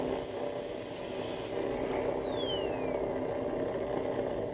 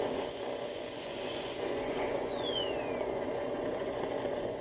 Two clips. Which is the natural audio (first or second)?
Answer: first